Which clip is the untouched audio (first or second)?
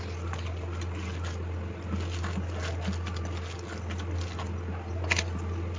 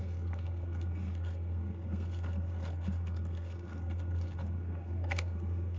first